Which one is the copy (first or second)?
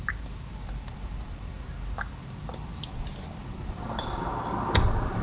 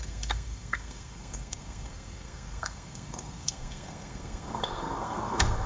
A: second